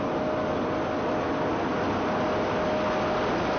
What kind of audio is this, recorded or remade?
recorded